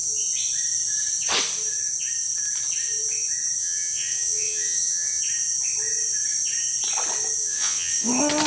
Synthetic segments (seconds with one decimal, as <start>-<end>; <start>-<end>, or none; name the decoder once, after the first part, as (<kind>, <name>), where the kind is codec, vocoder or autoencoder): 3.6-5.2 (vocoder, WaveNeXt); 7.4-8.1

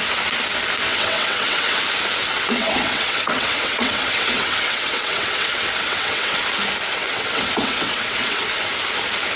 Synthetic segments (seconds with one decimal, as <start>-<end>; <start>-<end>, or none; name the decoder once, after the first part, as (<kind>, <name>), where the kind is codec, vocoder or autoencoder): 0.9-1.8 (vocoder, WaveNeXt); 2.3-6.4; 6.9-8.4

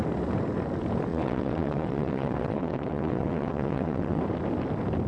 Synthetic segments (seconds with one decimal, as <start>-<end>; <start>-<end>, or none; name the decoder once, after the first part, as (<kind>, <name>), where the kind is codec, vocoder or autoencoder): 1.1-4.2 (vocoder, WaveNeXt)